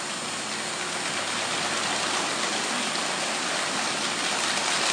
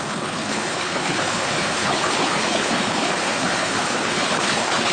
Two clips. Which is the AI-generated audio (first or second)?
second